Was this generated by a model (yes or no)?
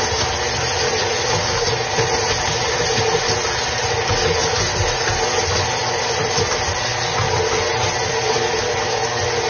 no